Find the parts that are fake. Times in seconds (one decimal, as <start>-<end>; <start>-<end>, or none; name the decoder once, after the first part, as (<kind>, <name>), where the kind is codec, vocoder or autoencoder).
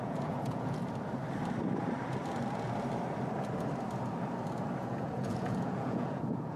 0.0-0.8 (vocoder, Vocos); 4.8-6.6